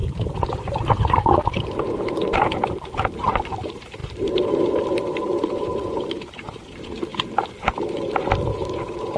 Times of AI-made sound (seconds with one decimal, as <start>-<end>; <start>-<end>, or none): 0.0-7.1; 8.5-9.2

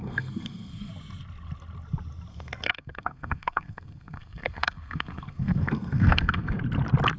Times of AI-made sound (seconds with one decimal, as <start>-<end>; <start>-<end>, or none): 0.0-0.9; 2.3-6.6